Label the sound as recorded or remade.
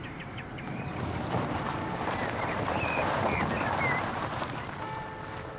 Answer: remade